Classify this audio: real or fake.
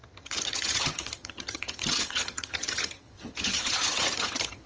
fake